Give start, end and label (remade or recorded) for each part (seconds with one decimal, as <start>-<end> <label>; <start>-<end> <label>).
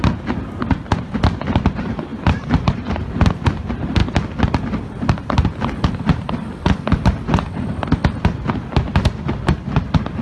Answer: 0.0-10.2 recorded